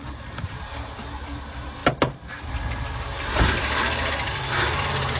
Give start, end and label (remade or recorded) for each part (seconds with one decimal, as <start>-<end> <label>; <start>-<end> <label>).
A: 0.0-5.2 recorded